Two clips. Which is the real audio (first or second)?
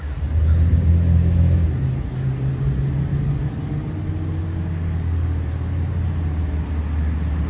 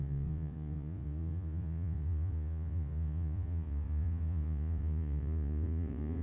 first